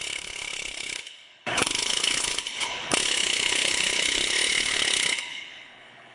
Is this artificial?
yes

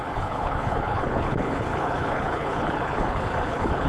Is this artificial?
yes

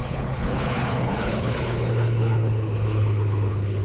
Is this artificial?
yes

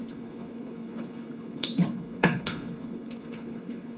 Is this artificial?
yes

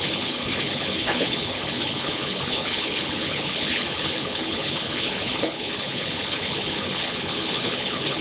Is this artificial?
yes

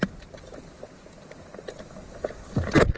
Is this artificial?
no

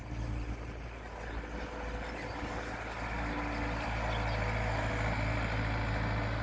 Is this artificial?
no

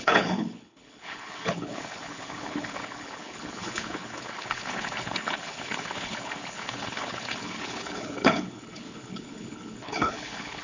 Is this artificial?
yes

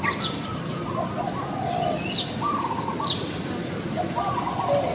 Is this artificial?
no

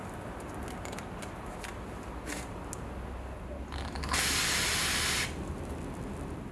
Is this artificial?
no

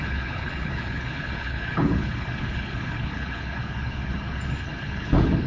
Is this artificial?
yes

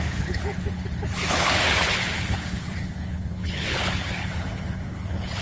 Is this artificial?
yes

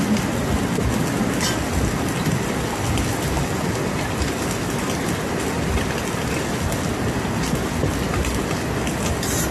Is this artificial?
no